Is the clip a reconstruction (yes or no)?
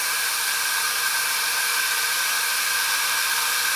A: no